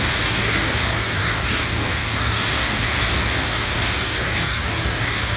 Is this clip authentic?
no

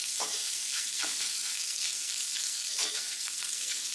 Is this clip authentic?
no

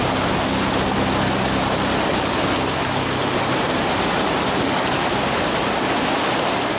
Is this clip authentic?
yes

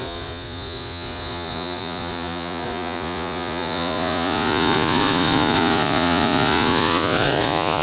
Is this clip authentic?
no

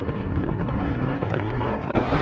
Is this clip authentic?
no